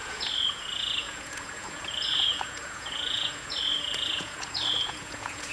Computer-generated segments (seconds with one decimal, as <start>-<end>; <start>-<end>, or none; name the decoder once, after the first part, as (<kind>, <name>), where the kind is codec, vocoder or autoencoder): 0.0-5.5 (vocoder, Vocos)